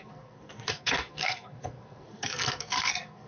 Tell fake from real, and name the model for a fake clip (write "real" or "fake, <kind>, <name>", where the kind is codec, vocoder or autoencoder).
fake, codec, SNAC